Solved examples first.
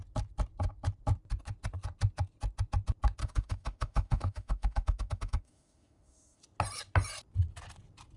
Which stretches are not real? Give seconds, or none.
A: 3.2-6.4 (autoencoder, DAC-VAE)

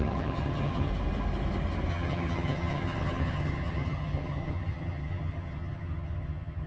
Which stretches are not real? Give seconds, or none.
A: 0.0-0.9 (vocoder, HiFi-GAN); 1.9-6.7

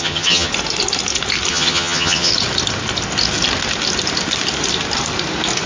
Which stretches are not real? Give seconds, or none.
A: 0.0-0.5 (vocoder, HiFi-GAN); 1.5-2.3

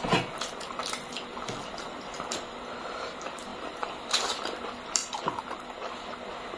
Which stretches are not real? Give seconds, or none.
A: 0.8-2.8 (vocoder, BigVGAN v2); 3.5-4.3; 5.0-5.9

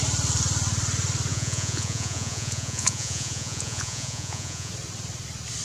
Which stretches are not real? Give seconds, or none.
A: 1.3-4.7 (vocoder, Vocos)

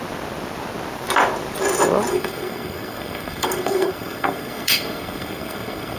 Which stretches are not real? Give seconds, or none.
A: 2.1-6.0 (codec, SNAC)

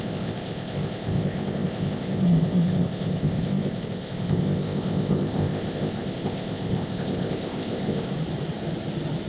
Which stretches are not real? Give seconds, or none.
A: 0.0-8.1 (codec, ZipCodec)